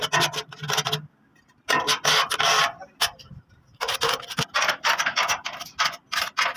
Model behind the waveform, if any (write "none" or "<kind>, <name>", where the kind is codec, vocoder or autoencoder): none